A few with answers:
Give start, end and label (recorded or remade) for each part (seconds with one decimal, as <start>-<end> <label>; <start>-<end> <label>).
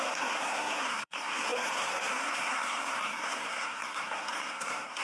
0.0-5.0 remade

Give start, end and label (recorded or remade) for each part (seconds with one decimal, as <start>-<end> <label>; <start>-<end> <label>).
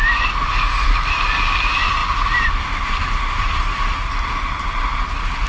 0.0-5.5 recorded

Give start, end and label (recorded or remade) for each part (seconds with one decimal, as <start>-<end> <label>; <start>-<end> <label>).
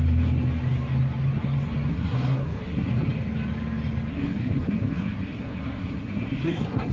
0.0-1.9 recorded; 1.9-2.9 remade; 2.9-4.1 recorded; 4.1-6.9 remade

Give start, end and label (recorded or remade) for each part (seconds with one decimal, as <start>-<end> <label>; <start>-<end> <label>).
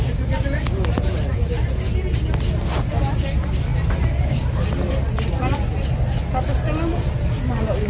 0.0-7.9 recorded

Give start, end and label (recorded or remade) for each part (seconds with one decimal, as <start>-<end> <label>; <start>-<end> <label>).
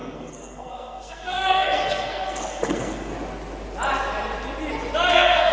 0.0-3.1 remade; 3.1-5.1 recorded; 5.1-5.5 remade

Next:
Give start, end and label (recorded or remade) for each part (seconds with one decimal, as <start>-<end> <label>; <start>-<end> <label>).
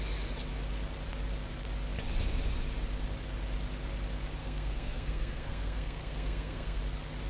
0.0-4.4 recorded; 4.4-6.8 remade; 6.8-7.3 recorded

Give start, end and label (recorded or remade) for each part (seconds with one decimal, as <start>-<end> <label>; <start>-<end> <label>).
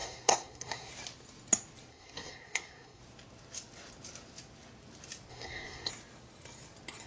0.0-0.9 remade; 0.9-1.9 recorded; 1.9-3.0 remade; 3.0-5.3 recorded; 5.3-5.9 remade; 5.9-7.1 recorded